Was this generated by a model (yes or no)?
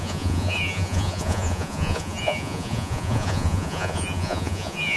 yes